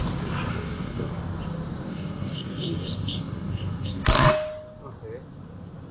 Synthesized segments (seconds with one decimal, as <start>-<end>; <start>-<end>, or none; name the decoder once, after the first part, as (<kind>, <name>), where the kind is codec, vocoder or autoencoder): 0.5-1.1 (codec, SNAC); 1.9-4.3